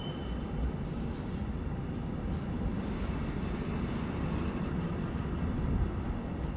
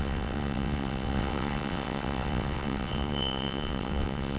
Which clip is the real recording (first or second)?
first